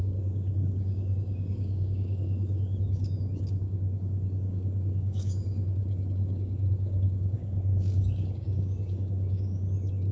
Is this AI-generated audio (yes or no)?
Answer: yes